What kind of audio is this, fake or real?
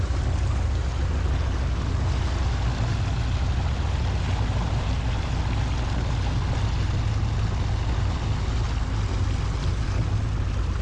real